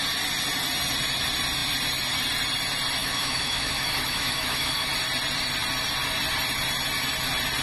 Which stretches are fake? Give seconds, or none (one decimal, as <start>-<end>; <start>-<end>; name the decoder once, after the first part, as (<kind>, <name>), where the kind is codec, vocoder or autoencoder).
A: 3.0-4.9 (autoencoder, DAC-VAE)